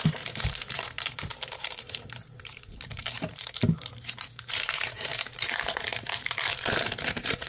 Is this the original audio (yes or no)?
no